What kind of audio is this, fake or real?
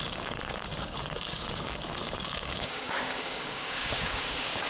fake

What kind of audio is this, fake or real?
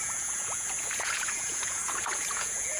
fake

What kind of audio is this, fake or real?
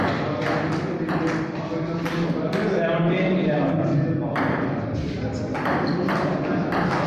real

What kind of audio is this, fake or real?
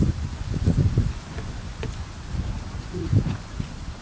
fake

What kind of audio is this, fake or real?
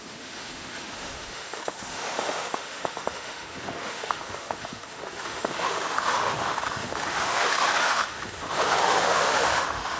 fake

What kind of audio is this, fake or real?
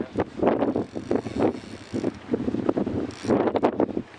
real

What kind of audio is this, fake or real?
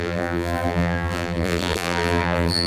fake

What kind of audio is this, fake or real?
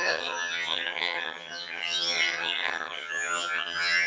fake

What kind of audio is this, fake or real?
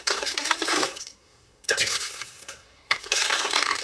fake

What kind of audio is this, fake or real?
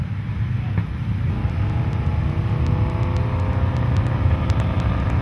real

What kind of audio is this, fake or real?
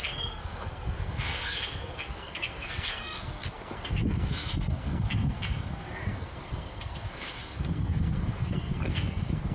fake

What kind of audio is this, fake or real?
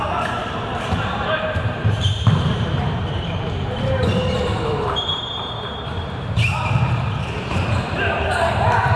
fake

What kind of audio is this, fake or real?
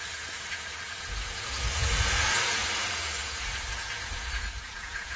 fake